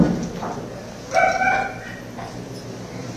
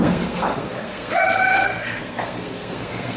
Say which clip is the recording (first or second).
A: first